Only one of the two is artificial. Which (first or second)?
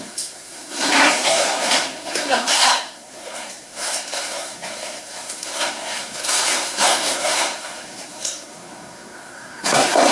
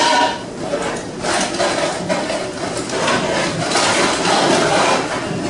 first